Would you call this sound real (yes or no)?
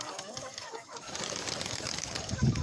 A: no